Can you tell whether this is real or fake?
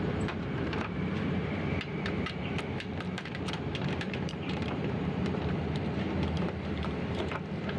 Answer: fake